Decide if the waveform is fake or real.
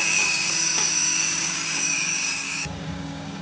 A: fake